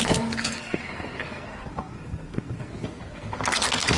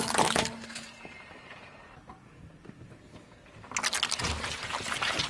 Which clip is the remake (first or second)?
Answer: first